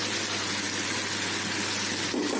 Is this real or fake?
real